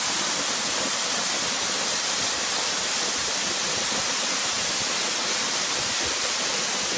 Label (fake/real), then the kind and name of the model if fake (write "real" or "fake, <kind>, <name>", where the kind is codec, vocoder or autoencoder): real